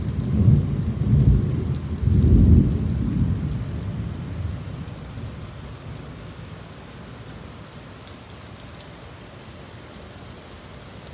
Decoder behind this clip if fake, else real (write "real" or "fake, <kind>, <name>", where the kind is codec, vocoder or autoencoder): real